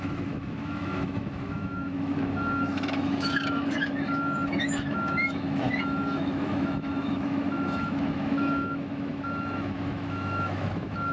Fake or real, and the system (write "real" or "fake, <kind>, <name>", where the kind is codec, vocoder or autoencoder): fake, autoencoder, DAC-VAE